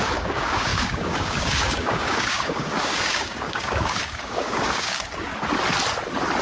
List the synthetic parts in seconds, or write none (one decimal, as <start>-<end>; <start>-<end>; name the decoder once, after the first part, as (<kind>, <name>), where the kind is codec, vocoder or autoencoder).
0.0-5.3 (codec, DAC)